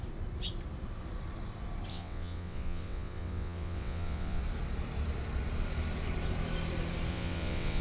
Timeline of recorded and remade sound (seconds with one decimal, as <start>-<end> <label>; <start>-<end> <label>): 0.0-1.9 recorded; 1.9-4.4 remade; 4.4-7.1 recorded; 7.1-7.8 remade